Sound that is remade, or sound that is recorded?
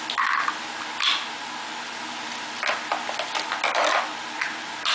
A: recorded